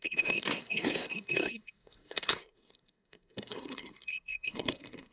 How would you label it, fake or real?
fake